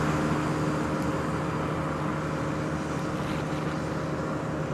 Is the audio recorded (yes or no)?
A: yes